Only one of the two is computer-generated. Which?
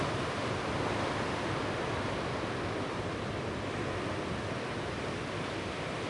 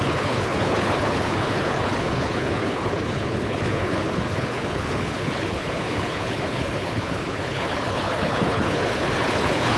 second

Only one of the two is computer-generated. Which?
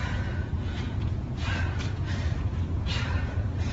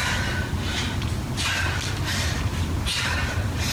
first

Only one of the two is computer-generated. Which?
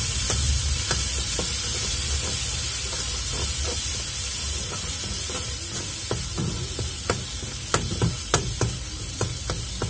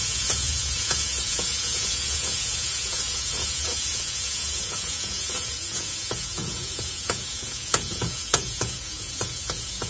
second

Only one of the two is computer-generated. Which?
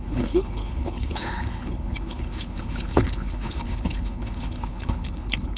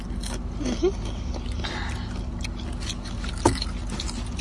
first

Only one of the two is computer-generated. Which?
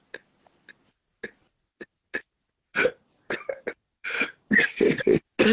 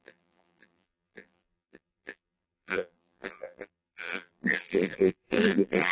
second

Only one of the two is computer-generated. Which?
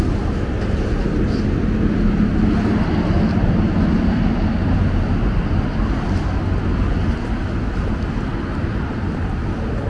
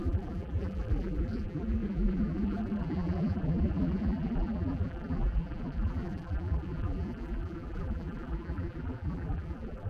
second